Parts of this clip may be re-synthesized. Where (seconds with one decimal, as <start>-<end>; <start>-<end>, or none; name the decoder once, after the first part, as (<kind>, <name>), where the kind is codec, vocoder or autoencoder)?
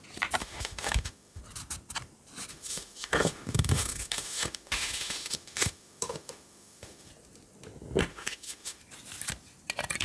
0.4-1.4 (autoencoder, DAC-VAE); 2.5-7.1; 8.1-8.8